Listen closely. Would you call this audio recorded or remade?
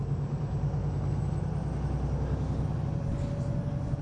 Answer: recorded